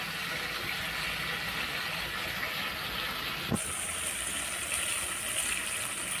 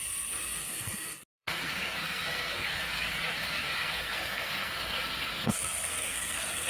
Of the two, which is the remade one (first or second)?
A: second